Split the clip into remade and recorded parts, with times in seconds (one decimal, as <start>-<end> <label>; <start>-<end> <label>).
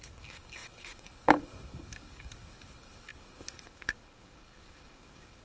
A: 0.0-5.4 remade